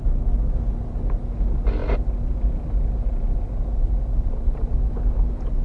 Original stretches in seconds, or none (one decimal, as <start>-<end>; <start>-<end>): 0.0-5.6